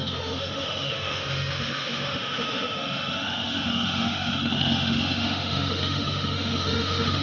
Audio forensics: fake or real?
fake